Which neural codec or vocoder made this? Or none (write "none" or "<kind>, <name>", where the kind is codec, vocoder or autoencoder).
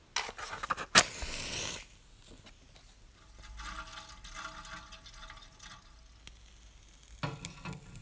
none